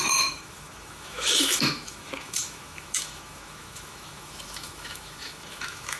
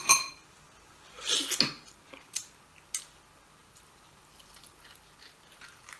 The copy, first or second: first